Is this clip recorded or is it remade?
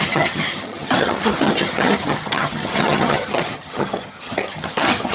remade